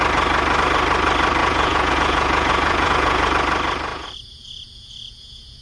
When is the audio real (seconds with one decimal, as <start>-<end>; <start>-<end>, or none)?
0.0-1.4; 3.3-3.9